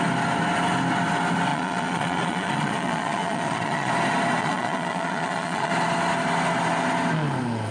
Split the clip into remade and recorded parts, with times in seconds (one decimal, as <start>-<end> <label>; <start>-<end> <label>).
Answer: 0.0-1.5 recorded; 1.5-3.9 remade; 3.9-4.4 recorded; 4.4-5.7 remade; 5.7-7.7 recorded